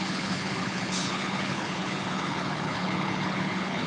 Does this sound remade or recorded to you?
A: remade